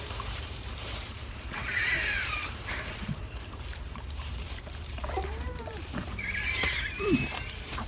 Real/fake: fake